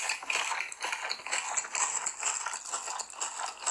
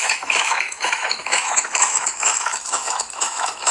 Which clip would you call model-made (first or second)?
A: second